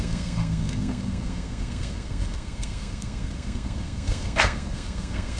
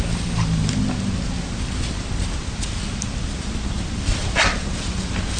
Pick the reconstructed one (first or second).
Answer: first